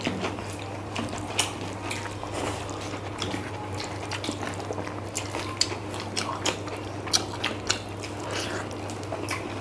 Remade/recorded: recorded